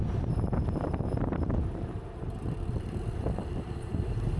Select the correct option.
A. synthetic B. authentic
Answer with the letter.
A